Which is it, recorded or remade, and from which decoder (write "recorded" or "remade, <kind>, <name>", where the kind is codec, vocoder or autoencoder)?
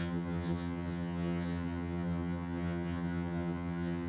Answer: remade, vocoder, HiFi-GAN